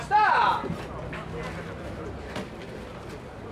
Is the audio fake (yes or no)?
no